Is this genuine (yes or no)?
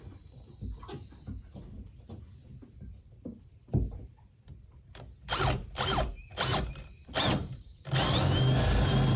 yes